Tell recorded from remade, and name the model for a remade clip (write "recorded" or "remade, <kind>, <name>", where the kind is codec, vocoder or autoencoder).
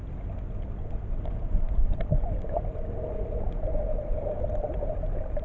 recorded